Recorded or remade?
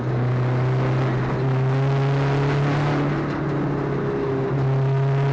recorded